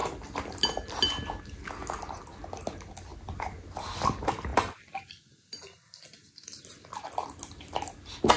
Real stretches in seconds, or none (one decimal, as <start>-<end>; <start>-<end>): 0.0-8.4

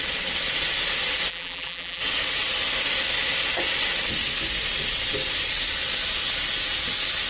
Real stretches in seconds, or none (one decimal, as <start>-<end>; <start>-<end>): 0.0-1.3; 2.0-7.3

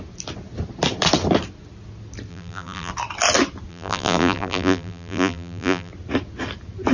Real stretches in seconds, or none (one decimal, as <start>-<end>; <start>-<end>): 0.0-2.3; 2.9-3.7; 5.9-6.9

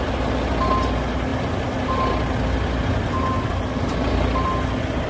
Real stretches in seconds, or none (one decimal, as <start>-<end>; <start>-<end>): 0.0-5.1